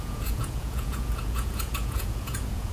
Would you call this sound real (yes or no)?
no